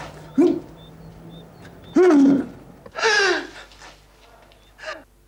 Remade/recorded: recorded